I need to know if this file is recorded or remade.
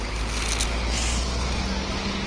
recorded